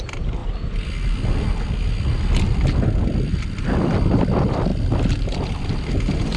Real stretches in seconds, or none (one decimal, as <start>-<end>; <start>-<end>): 0.4-4.2; 4.7-6.4